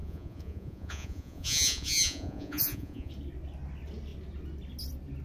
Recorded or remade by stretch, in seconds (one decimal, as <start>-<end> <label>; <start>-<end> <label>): 0.0-3.1 remade; 3.1-5.2 recorded